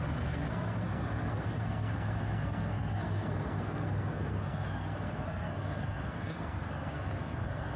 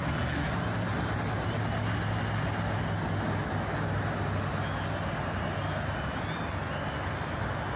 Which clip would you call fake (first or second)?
first